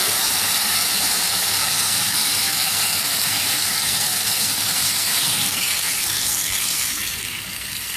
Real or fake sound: fake